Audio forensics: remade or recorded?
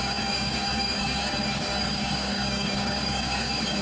remade